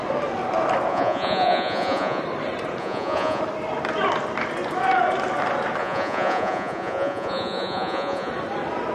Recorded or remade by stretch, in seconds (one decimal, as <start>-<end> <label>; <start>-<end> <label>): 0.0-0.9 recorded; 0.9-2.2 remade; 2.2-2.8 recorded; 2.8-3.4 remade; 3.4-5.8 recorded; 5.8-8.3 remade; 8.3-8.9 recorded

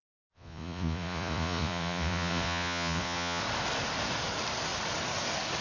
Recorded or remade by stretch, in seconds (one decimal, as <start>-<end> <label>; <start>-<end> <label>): 0.0-3.4 remade; 3.4-5.6 recorded

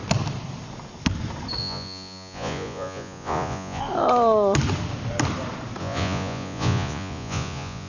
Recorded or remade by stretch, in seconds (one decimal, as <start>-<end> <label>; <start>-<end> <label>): 0.0-1.6 recorded; 1.6-3.8 remade; 3.8-5.8 recorded; 5.8-7.9 remade